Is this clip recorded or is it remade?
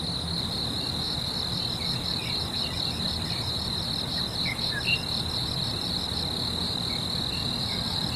recorded